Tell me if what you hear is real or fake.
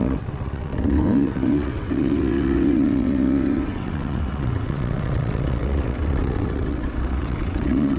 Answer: fake